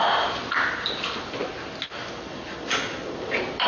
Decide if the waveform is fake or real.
real